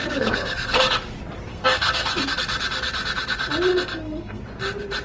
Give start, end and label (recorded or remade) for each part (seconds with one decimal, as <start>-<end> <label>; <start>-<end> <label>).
0.0-0.8 remade; 0.8-1.5 recorded; 1.5-2.3 remade; 2.3-3.7 recorded; 3.7-4.4 remade; 4.4-5.0 recorded